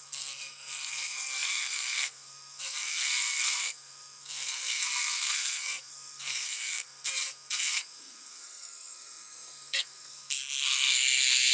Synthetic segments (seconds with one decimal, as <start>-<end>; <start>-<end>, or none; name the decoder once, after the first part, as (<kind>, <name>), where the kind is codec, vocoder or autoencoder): 0.0-11.5 (codec, SNAC)